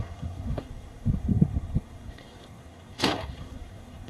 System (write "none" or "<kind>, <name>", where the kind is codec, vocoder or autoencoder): codec, SNAC